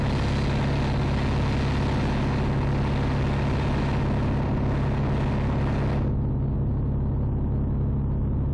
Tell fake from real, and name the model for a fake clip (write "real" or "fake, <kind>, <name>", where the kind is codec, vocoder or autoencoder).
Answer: real